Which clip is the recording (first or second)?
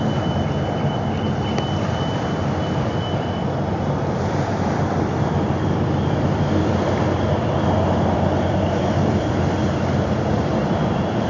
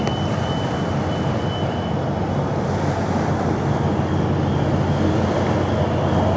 second